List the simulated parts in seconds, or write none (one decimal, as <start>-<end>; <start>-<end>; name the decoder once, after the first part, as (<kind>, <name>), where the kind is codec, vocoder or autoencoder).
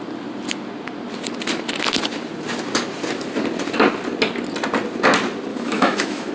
5.5-6.3 (autoencoder, DAC-VAE)